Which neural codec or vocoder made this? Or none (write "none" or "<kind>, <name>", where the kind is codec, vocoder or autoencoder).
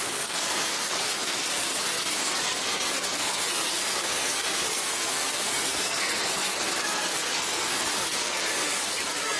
codec, SNAC